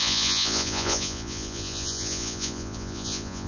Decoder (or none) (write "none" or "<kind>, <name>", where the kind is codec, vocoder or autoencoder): vocoder, Vocos